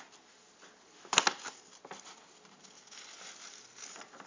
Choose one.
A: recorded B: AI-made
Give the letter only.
A